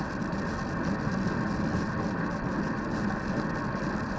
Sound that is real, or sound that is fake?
real